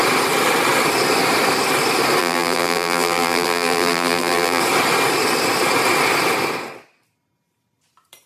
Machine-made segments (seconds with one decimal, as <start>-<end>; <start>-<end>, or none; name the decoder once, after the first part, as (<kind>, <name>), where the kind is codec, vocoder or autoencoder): 2.2-4.6 (vocoder, BigVGAN v2)